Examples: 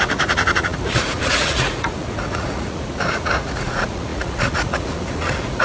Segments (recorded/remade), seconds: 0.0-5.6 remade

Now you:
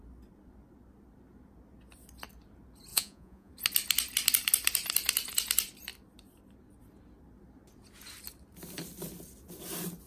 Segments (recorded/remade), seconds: 0.0-2.9 recorded; 2.9-3.5 remade; 3.5-10.1 recorded